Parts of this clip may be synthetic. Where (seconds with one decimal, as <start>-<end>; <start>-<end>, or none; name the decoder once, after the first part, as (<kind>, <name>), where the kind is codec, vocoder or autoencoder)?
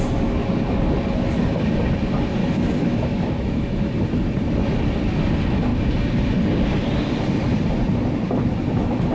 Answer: 2.4-3.9 (autoencoder, DAC-VAE)